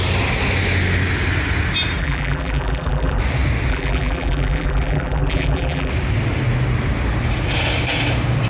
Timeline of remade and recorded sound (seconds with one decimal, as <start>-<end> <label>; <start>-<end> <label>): 0.0-2.0 recorded; 2.0-3.2 remade; 3.2-3.7 recorded; 3.7-5.9 remade; 5.9-8.5 recorded

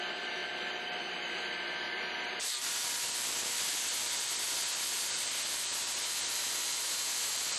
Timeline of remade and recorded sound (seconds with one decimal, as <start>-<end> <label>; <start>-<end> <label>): 0.0-0.4 remade; 0.4-1.0 recorded; 1.0-2.7 remade; 2.7-3.4 recorded; 3.4-7.6 remade

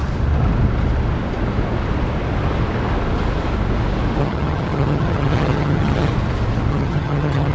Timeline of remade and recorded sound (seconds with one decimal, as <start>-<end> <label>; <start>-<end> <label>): 0.0-4.2 recorded; 4.2-6.1 remade; 6.1-6.7 recorded; 6.7-7.5 remade

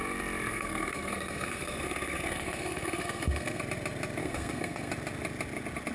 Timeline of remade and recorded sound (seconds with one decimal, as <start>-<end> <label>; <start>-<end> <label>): 0.0-0.5 recorded; 0.5-3.6 remade; 3.6-4.2 recorded; 4.2-4.9 remade; 4.9-5.9 recorded

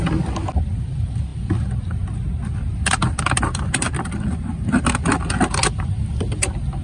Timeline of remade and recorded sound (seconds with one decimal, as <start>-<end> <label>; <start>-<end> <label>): 0.0-6.8 recorded

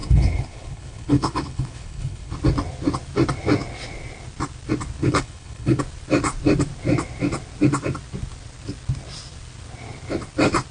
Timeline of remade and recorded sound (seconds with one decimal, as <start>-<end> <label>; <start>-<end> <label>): 0.0-2.3 remade; 2.3-5.0 recorded; 5.0-5.8 remade; 5.8-10.7 recorded

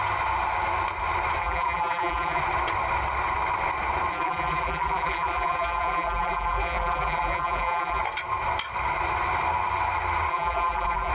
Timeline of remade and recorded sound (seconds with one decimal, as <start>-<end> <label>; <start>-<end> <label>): 0.0-1.4 recorded; 1.4-2.4 remade; 2.4-4.1 recorded; 4.1-8.0 remade; 8.0-10.3 recorded; 10.3-11.1 remade

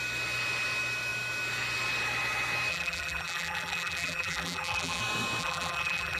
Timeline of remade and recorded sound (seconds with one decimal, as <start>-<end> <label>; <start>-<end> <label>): 0.0-2.7 recorded; 2.7-5.0 remade; 5.0-5.4 recorded; 5.4-6.2 remade